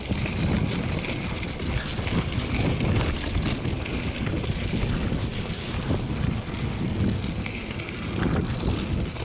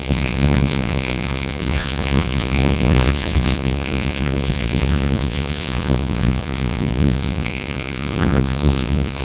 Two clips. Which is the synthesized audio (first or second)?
second